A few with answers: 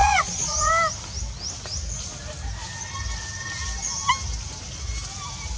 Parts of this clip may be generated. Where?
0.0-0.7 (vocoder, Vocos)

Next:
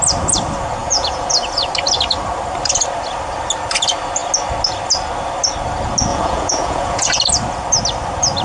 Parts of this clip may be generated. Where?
0.8-1.7 (vocoder, Vocos); 6.1-7.2

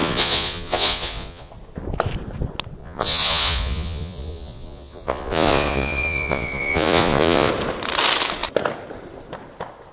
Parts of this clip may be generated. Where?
0.0-1.5 (vocoder, Vocos); 2.8-7.5

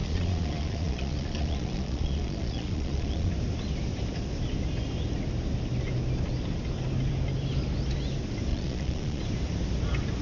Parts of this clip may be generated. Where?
0.0-3.3 (vocoder, Vocos); 8.5-9.2

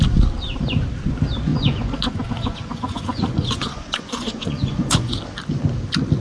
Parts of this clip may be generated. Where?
1.5-5.2 (vocoder, Vocos)

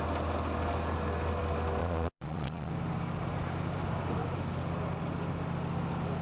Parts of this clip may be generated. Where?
1.8-2.7 (vocoder, Vocos)

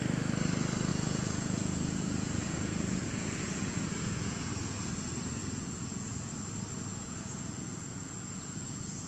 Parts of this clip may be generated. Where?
0.9-4.9 (vocoder, Vocos); 5.4-6.3; 6.9-9.1